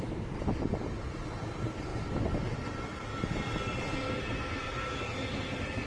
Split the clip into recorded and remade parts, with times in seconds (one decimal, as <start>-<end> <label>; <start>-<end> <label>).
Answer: 0.0-1.9 remade; 1.9-5.2 recorded; 5.2-5.9 remade